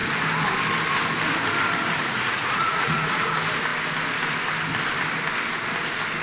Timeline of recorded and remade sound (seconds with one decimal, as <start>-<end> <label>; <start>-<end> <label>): 0.0-2.0 recorded; 2.0-3.3 remade; 3.3-6.2 recorded